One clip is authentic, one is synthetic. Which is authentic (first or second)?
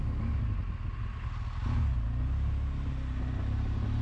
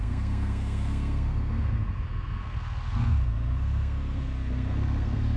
first